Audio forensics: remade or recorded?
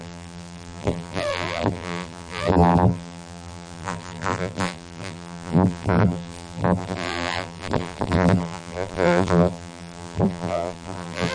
remade